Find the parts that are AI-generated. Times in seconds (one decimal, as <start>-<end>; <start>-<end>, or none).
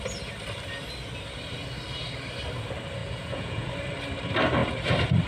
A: 3.0-3.7